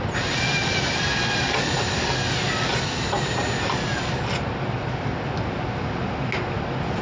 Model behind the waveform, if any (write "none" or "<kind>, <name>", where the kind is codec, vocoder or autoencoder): none